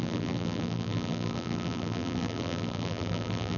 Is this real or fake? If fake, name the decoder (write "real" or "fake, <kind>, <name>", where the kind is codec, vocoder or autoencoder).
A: fake, vocoder, BigVGAN v2